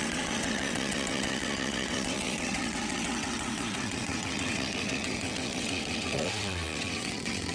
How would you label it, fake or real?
fake